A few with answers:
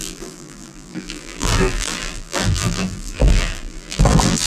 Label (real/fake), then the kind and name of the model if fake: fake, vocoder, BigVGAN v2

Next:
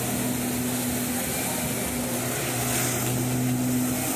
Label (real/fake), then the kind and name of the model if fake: real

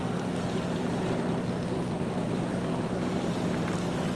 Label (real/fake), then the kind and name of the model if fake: real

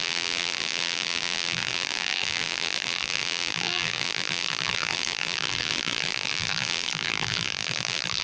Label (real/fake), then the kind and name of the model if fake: fake, vocoder, BigVGAN v2